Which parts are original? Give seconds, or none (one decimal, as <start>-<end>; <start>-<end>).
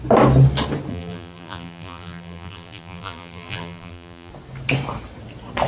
0.0-0.9; 4.3-5.7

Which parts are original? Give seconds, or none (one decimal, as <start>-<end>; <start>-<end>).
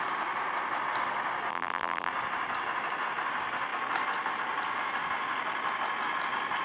0.0-1.5; 2.1-6.6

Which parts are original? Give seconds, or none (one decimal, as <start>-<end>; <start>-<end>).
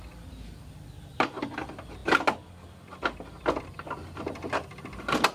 0.0-5.3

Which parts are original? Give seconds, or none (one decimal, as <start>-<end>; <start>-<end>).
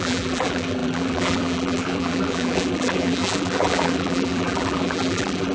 none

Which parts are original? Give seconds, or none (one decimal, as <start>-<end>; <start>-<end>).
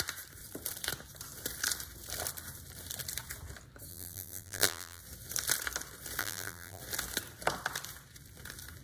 0.0-3.9; 5.0-6.2; 6.8-8.8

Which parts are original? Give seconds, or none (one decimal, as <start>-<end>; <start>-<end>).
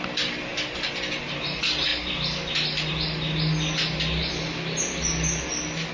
0.0-5.9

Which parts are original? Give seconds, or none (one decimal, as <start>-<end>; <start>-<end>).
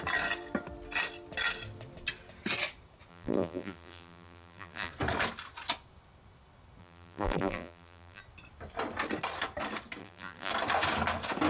0.0-3.1; 4.9-6.8; 8.2-10.0; 10.5-11.5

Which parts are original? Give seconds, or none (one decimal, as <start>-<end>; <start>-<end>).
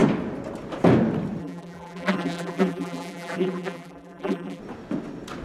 0.0-1.4; 4.6-5.4